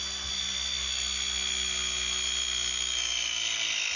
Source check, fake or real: real